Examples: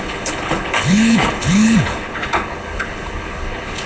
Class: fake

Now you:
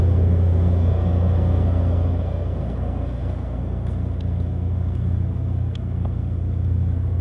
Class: fake